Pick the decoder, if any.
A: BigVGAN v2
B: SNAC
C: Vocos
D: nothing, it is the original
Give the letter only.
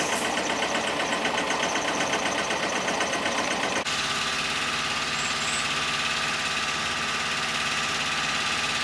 D